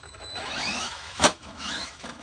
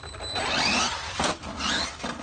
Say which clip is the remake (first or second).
first